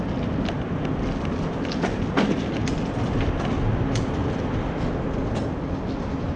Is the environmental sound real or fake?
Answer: real